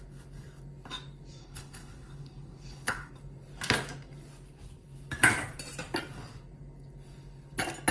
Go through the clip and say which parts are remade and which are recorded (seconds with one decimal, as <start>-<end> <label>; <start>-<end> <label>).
0.0-1.4 recorded; 1.4-3.1 remade; 3.1-7.9 recorded